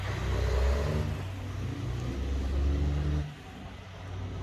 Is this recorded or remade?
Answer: recorded